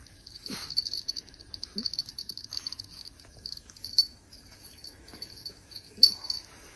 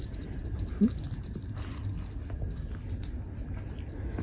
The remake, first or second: first